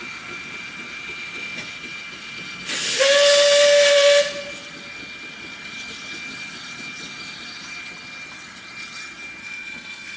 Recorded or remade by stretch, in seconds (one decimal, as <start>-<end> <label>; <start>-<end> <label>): 0.0-9.4 recorded; 9.4-10.2 remade